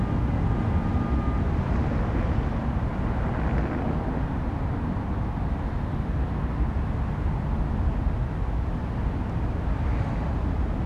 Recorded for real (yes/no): yes